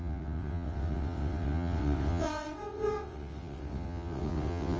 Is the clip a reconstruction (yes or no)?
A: yes